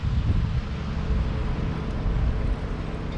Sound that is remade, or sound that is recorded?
recorded